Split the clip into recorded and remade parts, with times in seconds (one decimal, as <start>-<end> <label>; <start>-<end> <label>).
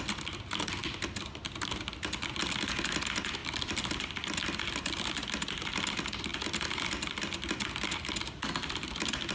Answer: 0.0-9.3 recorded